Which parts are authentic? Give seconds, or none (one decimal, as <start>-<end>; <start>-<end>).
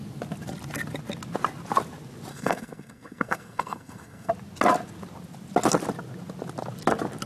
0.0-2.3; 4.3-7.3